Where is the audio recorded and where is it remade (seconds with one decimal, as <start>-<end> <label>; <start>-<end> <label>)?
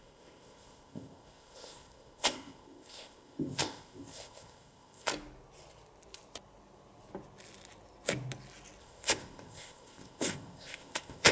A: 0.0-5.1 remade; 5.1-8.8 recorded; 8.8-11.3 remade